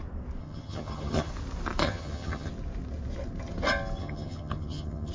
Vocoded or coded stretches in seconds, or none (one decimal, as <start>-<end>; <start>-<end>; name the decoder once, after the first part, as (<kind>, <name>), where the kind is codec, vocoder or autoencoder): 0.4-1.3 (vocoder, HiFi-GAN); 1.8-2.5; 4.0-5.1